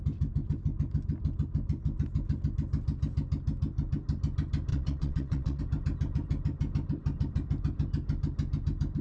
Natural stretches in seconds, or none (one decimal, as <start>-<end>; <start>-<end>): 0.0-4.7; 5.6-9.0